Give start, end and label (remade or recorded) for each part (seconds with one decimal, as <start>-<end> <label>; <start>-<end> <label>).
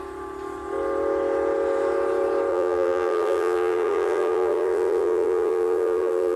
0.0-2.5 recorded; 2.5-6.4 remade